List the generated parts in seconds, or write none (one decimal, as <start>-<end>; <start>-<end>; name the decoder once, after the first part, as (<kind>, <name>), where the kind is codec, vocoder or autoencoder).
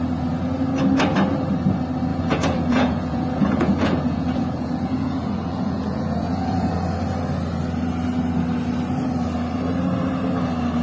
2.1-6.7 (vocoder, Vocos)